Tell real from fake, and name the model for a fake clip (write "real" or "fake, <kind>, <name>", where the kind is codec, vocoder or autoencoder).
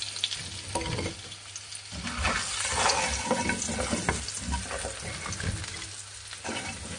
real